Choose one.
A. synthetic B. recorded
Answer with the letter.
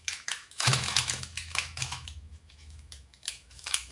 A